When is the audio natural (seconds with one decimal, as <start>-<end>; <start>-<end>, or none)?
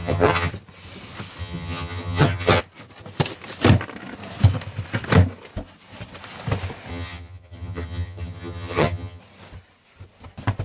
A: 0.5-1.4; 2.6-6.9; 9.2-10.6